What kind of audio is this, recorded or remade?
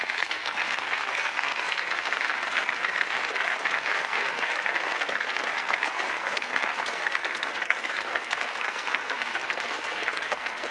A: remade